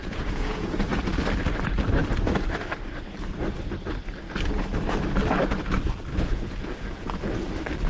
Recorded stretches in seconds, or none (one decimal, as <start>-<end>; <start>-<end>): 1.0-6.1; 7.2-7.9